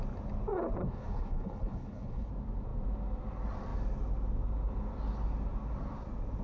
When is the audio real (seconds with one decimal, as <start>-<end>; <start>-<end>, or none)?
0.0-0.8; 2.3-6.4